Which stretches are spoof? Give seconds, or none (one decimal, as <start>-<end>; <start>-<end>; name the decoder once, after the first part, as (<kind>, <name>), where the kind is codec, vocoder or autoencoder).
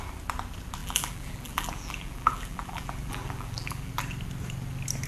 0.8-3.9 (vocoder, BigVGAN v2)